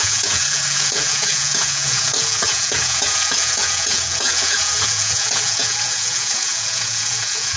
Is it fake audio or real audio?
fake